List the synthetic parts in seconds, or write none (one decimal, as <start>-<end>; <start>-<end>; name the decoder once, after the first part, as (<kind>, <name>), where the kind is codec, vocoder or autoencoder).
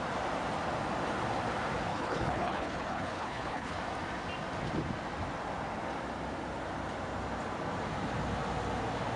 1.9-3.8 (codec, HILCodec)